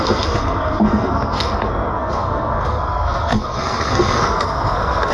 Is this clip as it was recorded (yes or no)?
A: no